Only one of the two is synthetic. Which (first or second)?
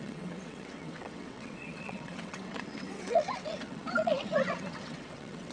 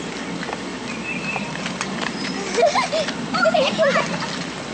first